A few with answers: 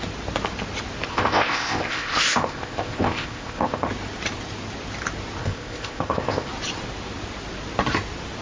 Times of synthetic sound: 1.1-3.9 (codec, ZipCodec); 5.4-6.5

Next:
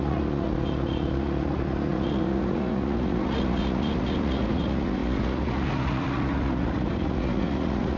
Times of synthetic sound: 0.0-8.0 (vocoder, Vocos)